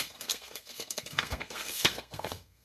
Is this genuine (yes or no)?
no